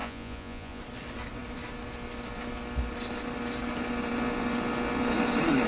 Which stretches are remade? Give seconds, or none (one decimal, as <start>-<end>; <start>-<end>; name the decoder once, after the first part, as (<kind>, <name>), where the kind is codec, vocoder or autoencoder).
0.0-0.8 (vocoder, Vocos)